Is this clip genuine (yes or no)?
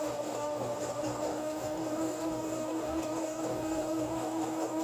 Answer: no